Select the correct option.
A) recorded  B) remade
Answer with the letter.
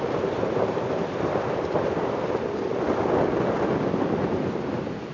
A